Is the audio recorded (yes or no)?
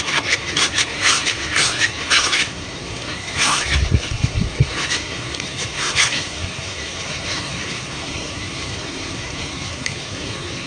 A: no